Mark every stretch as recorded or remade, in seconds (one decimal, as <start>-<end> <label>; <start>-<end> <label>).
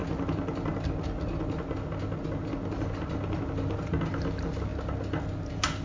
0.0-5.8 recorded